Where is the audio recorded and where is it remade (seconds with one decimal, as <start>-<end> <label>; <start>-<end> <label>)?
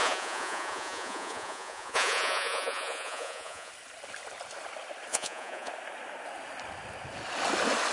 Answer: 0.0-3.7 remade; 3.7-5.1 recorded; 5.1-5.7 remade; 5.7-7.9 recorded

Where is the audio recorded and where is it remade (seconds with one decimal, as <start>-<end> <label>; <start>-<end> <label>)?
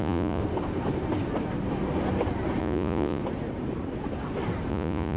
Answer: 0.0-0.4 remade; 0.4-2.6 recorded; 2.6-3.2 remade; 3.2-4.7 recorded; 4.7-5.2 remade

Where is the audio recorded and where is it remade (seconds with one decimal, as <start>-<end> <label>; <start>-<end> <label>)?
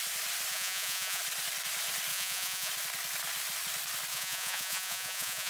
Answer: 0.0-0.5 recorded; 0.5-1.2 remade; 1.2-2.1 recorded; 2.1-2.7 remade; 2.7-4.1 recorded; 4.1-5.5 remade